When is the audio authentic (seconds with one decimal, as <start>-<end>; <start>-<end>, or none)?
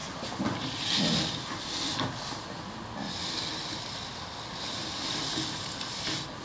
0.0-6.4